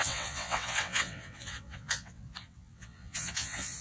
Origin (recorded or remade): remade